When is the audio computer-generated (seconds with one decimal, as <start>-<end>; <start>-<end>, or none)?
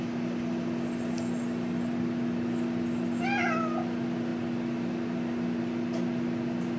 none